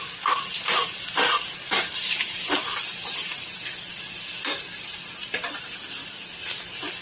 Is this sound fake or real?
real